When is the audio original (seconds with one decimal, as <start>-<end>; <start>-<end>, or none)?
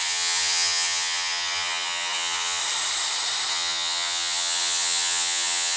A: 2.6-3.5